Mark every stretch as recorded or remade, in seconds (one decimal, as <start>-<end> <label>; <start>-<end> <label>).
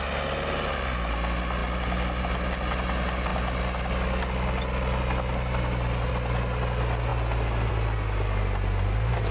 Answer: 0.0-9.3 recorded